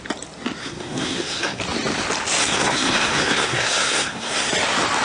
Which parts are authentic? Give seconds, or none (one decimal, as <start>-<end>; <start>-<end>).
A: 0.0-0.6; 1.6-2.4; 4.5-5.0